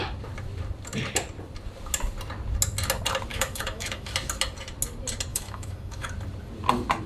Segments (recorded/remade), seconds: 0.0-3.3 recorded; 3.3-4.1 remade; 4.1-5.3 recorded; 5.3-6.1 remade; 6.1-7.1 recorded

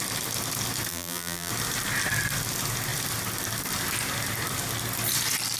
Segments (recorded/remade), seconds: 0.0-0.9 recorded; 0.9-1.5 remade; 1.5-5.6 recorded

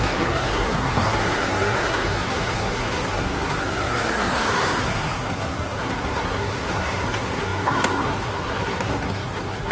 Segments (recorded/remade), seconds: 0.0-9.7 remade

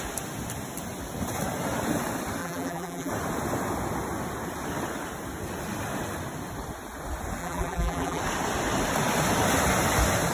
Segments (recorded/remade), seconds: 0.0-2.4 recorded; 2.4-3.1 remade; 3.1-7.4 recorded; 7.4-8.2 remade; 8.2-10.3 recorded

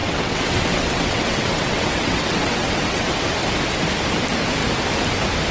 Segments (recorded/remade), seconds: 0.0-3.3 remade; 3.3-5.5 recorded